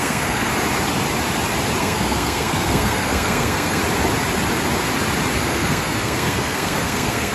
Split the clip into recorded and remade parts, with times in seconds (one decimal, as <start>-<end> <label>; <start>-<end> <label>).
0.0-0.5 remade; 0.5-1.8 recorded; 1.8-3.8 remade; 3.8-5.4 recorded; 5.4-7.3 remade